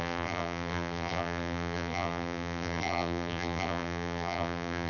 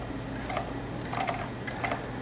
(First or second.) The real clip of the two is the second